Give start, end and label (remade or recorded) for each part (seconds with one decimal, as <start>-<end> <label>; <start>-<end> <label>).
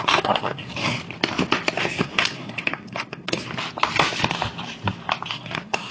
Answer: 0.0-1.0 remade; 1.0-1.8 recorded; 1.8-3.5 remade; 3.5-5.3 recorded; 5.3-5.9 remade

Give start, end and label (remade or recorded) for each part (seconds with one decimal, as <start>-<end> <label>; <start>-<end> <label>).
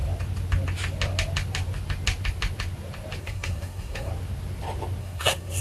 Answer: 0.0-3.2 recorded; 3.2-4.1 remade; 4.1-5.0 recorded; 5.0-5.6 remade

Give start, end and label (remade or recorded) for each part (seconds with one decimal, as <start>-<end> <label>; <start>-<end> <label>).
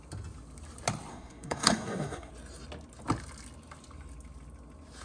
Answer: 0.0-1.1 recorded; 1.1-2.3 remade; 2.3-5.0 recorded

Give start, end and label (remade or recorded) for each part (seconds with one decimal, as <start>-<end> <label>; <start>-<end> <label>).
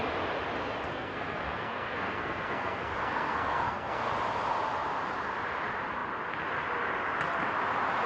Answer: 0.0-0.9 recorded; 0.9-4.1 remade; 4.1-8.1 recorded